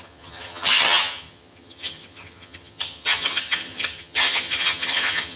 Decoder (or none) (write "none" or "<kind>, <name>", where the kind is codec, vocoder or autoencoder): vocoder, HiFi-GAN